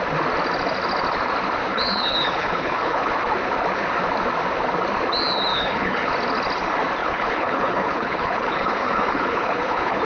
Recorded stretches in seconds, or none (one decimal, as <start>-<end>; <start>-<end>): 0.0-1.7; 3.1-5.5; 6.1-7.0